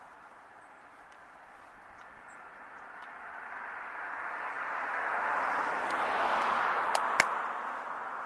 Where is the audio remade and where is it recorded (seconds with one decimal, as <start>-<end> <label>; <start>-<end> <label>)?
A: 0.0-8.3 recorded